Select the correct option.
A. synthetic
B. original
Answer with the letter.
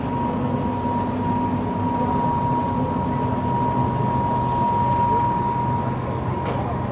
B